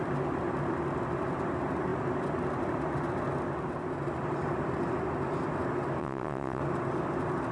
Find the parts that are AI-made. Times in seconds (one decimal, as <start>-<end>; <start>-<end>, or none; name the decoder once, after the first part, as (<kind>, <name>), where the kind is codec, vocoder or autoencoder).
6.0-6.6 (vocoder, WaveNeXt)

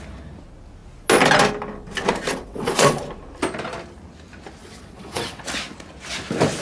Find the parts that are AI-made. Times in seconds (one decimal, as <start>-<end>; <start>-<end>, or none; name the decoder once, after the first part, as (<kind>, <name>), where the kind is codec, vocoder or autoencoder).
2.3-3.0 (vocoder, WaveNeXt); 4.6-5.4